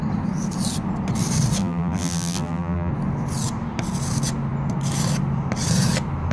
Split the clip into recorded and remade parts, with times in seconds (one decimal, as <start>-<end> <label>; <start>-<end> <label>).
0.0-1.6 recorded; 1.6-2.9 remade; 2.9-6.3 recorded